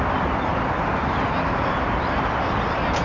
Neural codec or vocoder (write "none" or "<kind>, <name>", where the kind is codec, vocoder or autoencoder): none